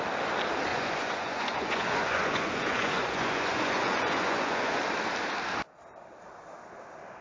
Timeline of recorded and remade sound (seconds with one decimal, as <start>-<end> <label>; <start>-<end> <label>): 0.0-0.7 recorded; 0.7-4.8 remade; 4.8-7.2 recorded